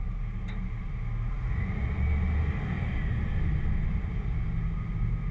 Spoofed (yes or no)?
no